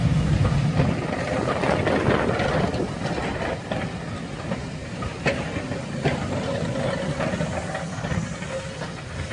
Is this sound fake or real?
real